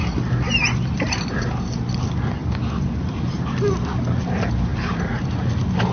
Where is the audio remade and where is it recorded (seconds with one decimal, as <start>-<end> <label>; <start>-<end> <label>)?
0.0-1.5 remade; 1.5-2.4 recorded; 2.4-3.3 remade; 3.3-5.9 recorded